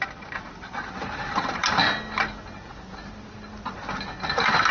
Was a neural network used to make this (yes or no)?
no